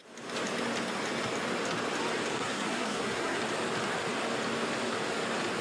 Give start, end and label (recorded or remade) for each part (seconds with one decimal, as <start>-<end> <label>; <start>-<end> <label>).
0.0-2.3 recorded; 2.3-3.4 remade; 3.4-5.6 recorded